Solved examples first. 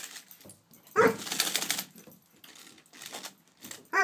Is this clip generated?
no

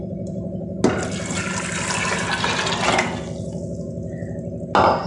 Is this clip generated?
no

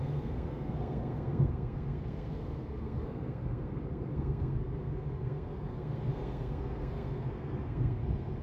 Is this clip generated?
yes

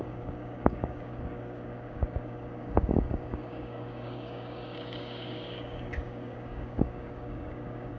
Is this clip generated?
yes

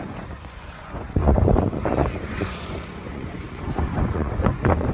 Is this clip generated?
yes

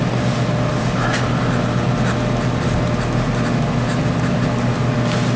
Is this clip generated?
no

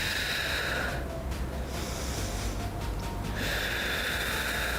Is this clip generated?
no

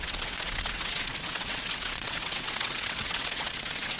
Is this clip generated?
yes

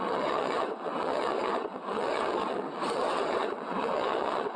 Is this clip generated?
yes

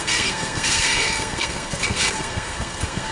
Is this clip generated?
yes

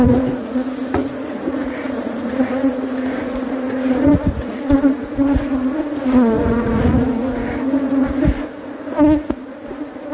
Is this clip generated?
yes